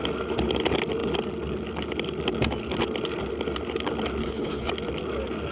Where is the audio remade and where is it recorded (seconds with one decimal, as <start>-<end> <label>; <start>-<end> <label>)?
0.0-4.2 recorded; 4.2-4.7 remade; 4.7-5.5 recorded